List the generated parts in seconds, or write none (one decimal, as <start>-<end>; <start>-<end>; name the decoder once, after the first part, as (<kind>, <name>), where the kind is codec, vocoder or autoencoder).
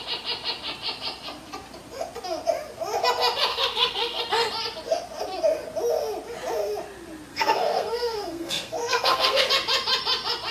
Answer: 3.5-4.2 (codec, SNAC); 7.3-9.4